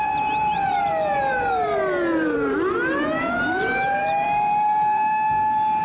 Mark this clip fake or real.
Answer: fake